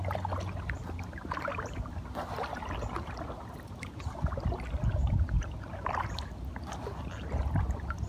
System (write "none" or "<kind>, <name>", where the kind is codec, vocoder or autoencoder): none